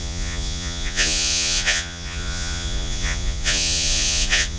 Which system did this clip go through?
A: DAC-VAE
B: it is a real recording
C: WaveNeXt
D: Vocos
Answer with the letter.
D